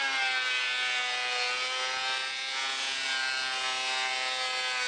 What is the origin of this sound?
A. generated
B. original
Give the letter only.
B